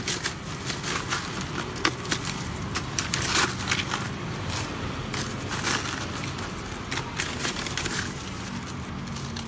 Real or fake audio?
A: real